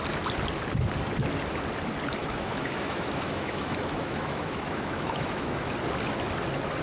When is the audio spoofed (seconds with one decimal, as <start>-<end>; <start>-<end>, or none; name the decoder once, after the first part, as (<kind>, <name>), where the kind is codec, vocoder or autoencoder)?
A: 2.2-5.7 (autoencoder, DAC-VAE)